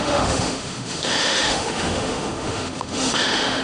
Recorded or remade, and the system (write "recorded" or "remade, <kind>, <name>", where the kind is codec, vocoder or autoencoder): remade, autoencoder, DAC-VAE